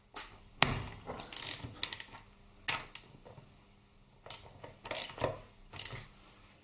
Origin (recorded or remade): recorded